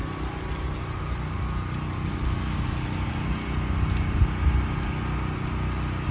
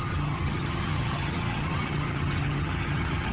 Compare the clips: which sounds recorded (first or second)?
first